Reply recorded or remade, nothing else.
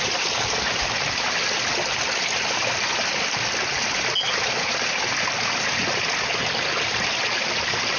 recorded